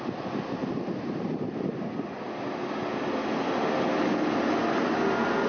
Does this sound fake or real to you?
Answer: real